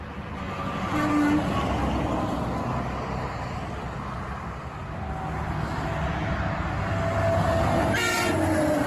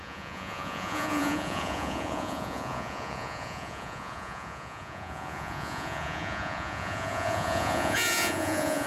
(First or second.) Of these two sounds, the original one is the first